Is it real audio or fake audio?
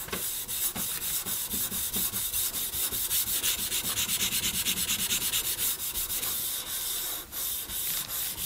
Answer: fake